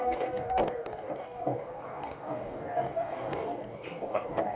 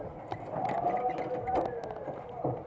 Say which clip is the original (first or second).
second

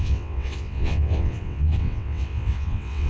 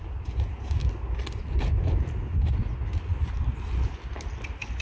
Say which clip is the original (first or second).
second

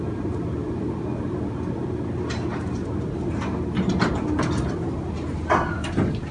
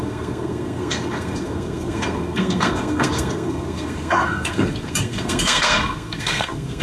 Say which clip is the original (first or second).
first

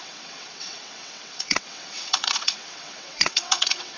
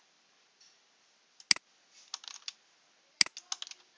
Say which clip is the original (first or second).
second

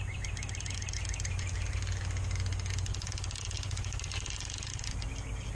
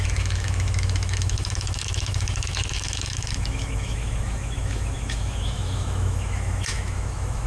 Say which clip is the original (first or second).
first